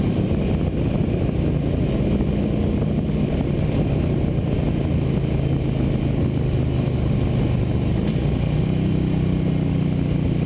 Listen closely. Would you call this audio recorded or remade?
recorded